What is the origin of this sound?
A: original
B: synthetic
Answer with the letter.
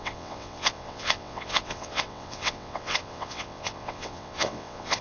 B